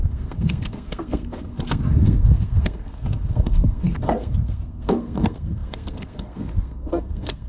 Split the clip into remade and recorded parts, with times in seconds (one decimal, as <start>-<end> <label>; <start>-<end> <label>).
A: 0.0-7.5 remade